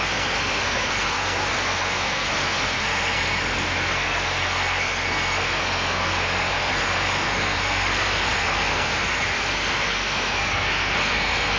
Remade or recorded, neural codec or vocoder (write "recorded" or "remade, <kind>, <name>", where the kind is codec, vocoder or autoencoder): remade, codec, SNAC